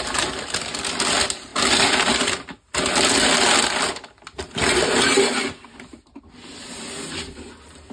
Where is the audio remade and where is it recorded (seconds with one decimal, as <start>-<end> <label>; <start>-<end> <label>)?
0.0-7.9 recorded